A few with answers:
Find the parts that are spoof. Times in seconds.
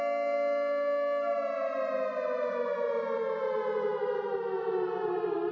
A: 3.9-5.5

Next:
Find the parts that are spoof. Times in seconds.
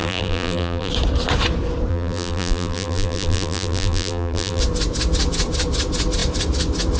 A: 0.0-0.9; 1.9-4.6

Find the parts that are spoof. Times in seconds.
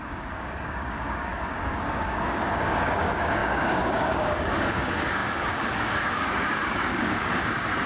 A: 0.0-7.9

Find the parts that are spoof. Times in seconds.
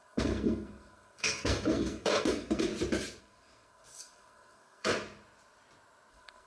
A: 0.0-2.7; 3.2-4.9; 6.1-6.5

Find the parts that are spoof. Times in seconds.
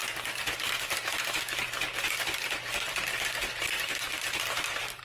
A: none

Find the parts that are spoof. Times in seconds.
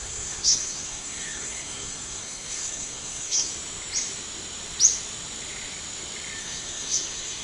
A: 0.0-3.5; 6.4-7.4